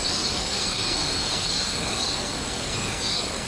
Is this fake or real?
fake